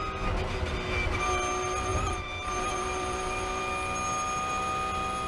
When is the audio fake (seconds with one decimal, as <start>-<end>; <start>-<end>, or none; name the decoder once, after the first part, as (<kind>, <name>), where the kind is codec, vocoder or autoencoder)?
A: 1.9-3.6 (vocoder, BigVGAN v2)